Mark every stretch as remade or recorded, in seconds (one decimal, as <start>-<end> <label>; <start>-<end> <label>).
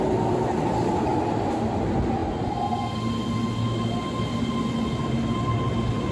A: 0.0-6.1 recorded